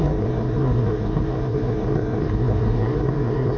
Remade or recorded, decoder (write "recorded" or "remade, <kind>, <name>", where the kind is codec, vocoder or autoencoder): remade, codec, SNAC